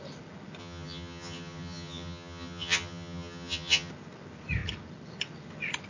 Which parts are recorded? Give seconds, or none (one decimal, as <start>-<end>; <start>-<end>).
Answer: 0.0-0.6; 3.9-5.9